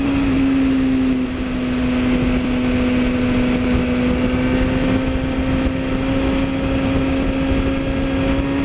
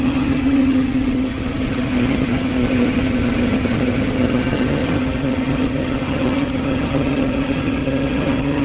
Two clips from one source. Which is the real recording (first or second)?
first